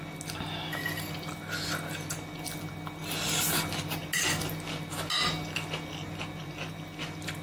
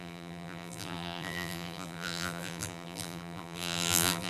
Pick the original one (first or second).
first